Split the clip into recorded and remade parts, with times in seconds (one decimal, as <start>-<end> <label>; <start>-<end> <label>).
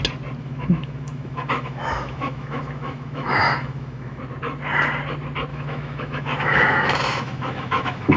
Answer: 0.0-0.4 recorded; 0.4-4.2 remade; 4.2-5.5 recorded; 5.5-8.2 remade